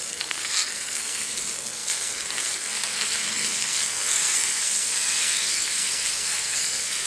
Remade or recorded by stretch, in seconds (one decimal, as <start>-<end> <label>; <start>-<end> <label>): 0.0-7.1 remade